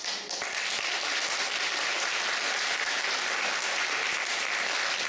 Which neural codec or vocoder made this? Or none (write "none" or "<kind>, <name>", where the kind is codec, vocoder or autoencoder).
none